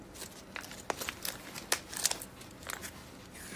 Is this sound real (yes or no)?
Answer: yes